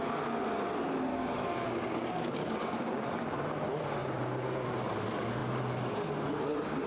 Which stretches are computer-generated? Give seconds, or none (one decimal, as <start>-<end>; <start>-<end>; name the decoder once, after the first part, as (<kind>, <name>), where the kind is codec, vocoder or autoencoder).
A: 1.1-3.0 (codec, DAC)